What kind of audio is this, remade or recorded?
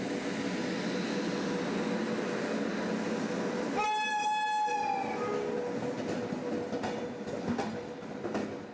recorded